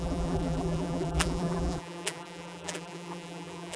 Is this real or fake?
fake